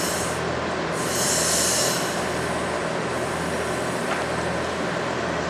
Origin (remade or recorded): recorded